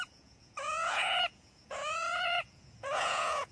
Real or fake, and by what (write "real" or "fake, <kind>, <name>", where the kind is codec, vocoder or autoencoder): fake, vocoder, Vocos